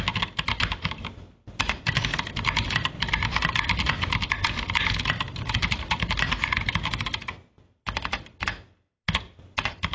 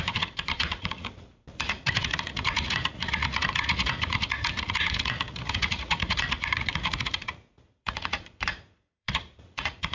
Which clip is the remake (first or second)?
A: second